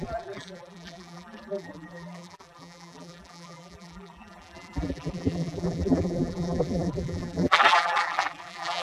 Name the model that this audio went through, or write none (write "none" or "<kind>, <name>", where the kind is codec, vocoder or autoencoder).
vocoder, BigVGAN v2